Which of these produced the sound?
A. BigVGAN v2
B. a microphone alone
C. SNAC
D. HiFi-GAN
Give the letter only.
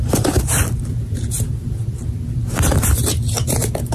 B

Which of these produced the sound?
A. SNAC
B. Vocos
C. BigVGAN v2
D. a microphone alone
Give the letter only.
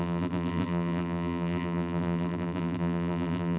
C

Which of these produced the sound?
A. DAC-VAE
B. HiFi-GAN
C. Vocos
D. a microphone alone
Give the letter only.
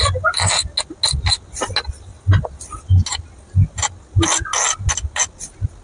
D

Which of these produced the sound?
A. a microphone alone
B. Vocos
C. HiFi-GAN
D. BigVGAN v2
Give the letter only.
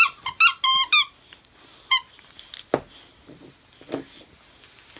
A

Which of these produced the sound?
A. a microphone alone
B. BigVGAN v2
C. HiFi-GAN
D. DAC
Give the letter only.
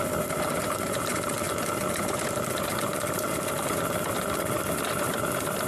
A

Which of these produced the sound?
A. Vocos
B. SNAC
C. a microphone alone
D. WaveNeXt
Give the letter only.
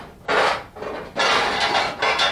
C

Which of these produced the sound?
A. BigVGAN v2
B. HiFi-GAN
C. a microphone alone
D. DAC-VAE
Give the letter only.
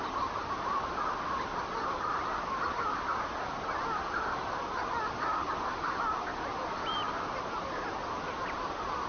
C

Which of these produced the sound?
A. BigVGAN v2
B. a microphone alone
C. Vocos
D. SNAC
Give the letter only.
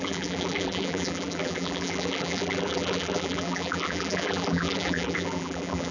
A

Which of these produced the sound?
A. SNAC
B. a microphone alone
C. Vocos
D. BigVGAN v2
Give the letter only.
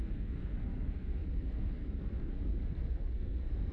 A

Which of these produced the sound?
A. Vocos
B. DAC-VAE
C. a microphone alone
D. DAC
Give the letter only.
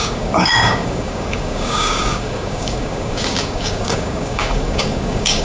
D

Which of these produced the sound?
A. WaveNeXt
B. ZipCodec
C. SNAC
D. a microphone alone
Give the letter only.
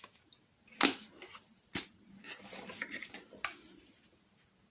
D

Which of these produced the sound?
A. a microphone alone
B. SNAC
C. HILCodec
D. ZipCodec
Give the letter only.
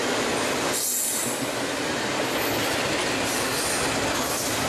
A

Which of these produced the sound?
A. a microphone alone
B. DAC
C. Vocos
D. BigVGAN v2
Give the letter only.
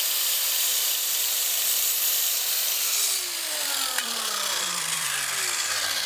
D